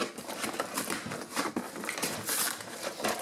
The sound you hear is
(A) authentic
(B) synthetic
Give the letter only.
A